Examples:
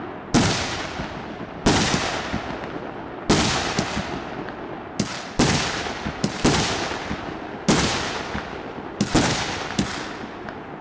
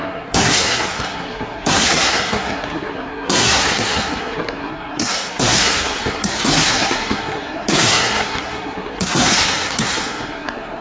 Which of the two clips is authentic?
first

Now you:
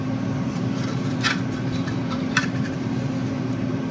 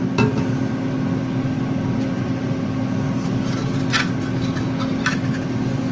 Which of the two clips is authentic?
second